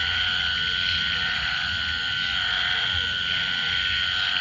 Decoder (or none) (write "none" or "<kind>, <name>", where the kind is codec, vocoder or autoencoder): none